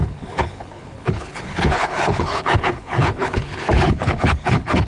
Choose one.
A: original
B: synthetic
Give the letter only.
B